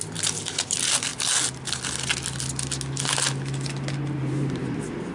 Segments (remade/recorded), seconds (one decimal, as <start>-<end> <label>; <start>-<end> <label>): 0.0-1.1 remade; 1.1-4.2 recorded; 4.2-5.1 remade